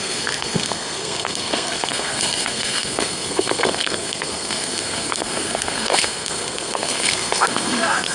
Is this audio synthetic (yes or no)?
yes